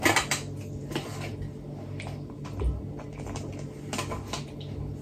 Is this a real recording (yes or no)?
yes